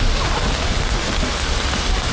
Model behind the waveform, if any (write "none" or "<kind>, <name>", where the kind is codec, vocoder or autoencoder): none